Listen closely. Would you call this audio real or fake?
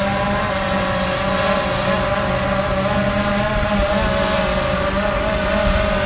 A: real